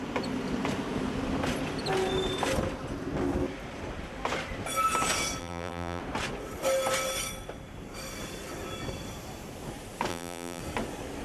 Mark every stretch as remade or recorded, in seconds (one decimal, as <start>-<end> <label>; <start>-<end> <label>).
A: 0.0-5.4 recorded; 5.4-6.0 remade; 6.0-10.1 recorded; 10.1-10.6 remade; 10.6-11.2 recorded